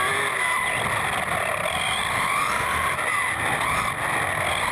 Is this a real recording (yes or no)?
yes